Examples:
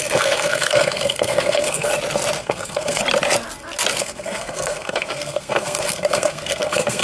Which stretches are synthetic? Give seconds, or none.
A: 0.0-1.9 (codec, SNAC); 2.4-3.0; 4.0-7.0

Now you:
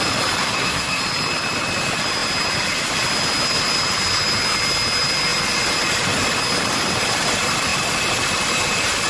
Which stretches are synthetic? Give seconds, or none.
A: 0.4-1.0 (codec, SNAC)